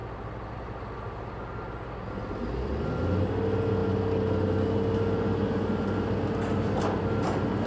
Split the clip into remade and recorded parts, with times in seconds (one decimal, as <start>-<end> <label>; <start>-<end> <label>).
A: 0.0-7.7 recorded